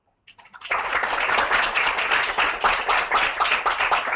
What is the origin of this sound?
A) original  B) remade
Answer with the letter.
A